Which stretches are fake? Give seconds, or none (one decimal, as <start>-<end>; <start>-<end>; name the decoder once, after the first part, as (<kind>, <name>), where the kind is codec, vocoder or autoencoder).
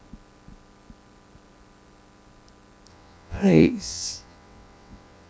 2.9-5.3 (vocoder, WaveNeXt)